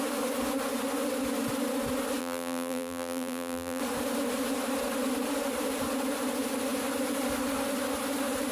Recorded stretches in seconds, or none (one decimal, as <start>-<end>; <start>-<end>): 0.0-2.2; 3.8-8.5